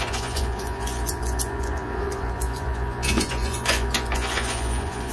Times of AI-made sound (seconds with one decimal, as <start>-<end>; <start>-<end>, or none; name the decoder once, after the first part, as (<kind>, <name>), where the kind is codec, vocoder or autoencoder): 0.0-5.1 (vocoder, Vocos)